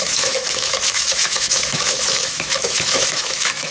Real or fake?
fake